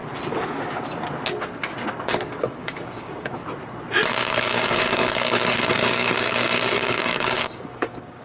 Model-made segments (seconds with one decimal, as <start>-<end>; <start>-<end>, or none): 1.9-3.4; 4.1-8.2